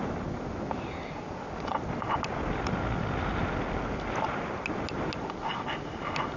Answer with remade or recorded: recorded